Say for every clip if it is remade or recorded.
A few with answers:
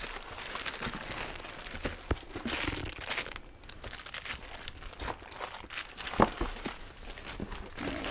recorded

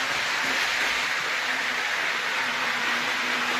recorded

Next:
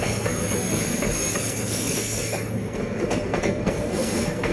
remade